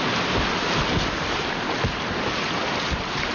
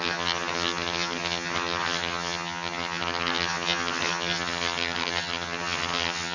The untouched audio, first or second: first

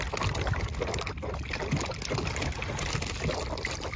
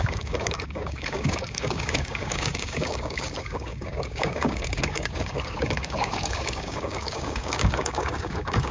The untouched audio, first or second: first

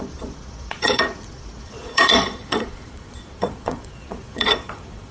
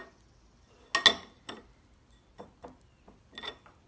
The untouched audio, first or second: second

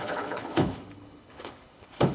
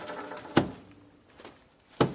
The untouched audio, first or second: second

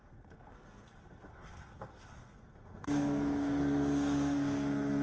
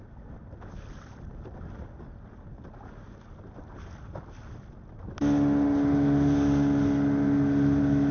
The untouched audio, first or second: second